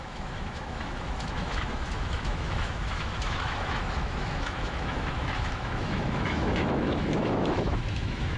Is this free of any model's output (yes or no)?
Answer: no